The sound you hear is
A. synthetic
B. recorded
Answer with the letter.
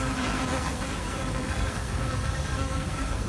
A